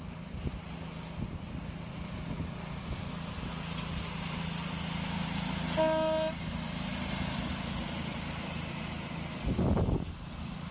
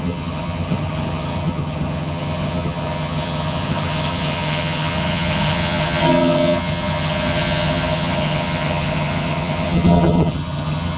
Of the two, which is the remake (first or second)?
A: second